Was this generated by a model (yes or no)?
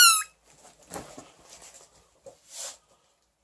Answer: no